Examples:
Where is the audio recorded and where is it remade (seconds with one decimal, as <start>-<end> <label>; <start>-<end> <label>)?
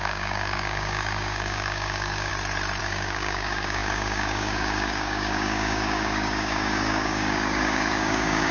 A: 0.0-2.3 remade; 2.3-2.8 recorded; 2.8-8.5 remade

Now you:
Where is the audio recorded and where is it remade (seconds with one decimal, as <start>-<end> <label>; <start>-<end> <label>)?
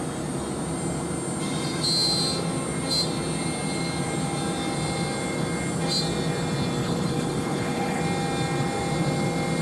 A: 0.0-6.8 recorded; 6.8-8.0 remade; 8.0-9.6 recorded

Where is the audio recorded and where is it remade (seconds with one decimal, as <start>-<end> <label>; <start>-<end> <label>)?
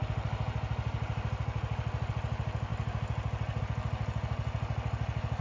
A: 0.0-5.4 recorded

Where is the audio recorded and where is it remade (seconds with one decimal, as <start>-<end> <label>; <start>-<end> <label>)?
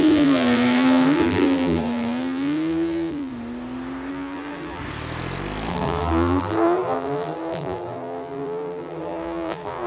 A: 0.0-3.3 remade; 3.3-4.1 recorded; 4.1-4.8 remade; 4.8-5.7 recorded; 5.7-9.9 remade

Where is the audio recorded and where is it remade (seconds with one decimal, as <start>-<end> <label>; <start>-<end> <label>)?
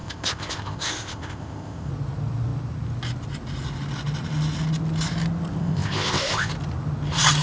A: 0.0-1.9 remade; 1.9-5.6 recorded; 5.6-6.5 remade; 6.5-7.4 recorded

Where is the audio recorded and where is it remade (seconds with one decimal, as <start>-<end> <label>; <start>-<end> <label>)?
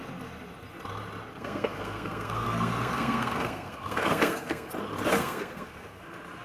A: 0.0-1.3 recorded; 1.3-4.7 remade; 4.7-5.2 recorded; 5.2-6.0 remade; 6.0-6.4 recorded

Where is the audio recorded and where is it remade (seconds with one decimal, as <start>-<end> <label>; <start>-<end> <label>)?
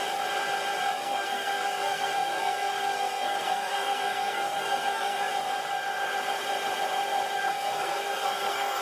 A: 0.0-0.8 recorded; 0.8-5.3 remade; 5.3-7.5 recorded; 7.5-8.8 remade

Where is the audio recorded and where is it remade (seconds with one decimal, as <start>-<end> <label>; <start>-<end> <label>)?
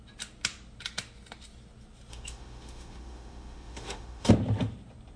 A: 0.0-2.1 recorded; 2.1-4.3 remade; 4.3-5.2 recorded